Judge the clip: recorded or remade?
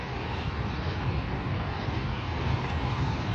remade